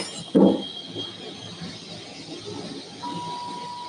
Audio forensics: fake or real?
real